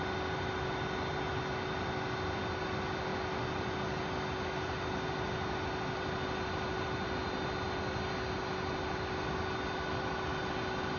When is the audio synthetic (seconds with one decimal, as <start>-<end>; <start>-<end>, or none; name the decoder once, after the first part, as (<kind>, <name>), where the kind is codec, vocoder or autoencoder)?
none